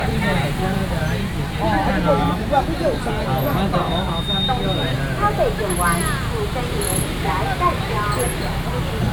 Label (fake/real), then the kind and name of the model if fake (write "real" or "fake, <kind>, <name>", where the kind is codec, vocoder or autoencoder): real